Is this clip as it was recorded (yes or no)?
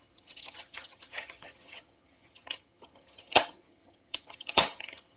no